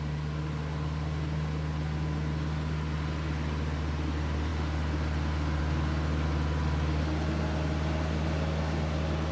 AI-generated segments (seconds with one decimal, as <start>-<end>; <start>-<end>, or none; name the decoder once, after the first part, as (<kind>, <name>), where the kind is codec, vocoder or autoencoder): none